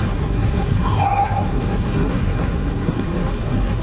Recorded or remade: remade